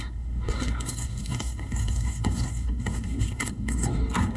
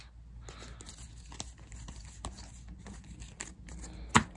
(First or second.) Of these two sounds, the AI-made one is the first